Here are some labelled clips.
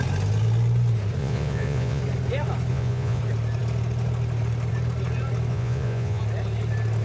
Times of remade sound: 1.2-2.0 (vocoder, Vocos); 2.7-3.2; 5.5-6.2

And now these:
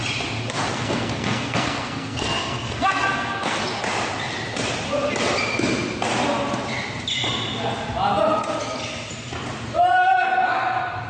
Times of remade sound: 0.7-3.6 (codec, SNAC)

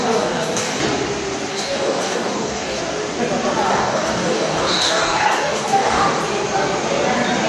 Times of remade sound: 0.0-0.8 (codec, DAC); 1.5-2.8; 3.7-6.2